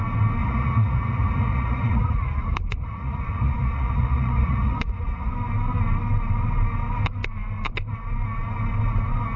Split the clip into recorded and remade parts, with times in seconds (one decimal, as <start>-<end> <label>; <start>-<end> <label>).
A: 0.0-0.4 recorded; 0.4-5.3 remade; 5.3-9.4 recorded